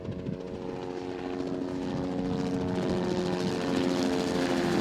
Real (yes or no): yes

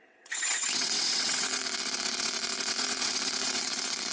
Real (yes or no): no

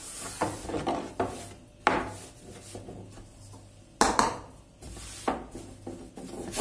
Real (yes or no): yes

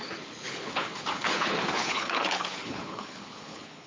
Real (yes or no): no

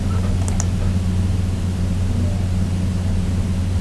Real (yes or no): yes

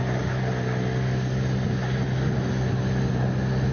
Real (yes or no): yes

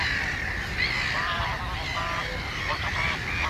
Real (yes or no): yes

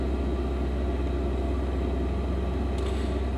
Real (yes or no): yes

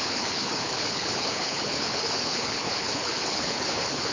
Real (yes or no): no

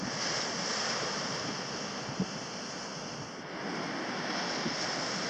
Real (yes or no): yes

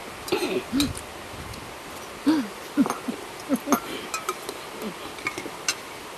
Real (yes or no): yes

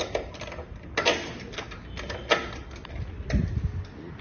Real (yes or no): yes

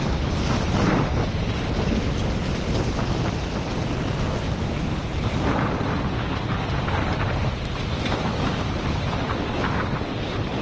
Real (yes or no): yes